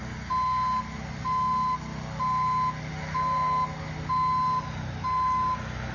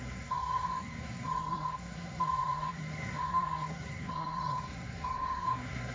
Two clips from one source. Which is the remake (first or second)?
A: second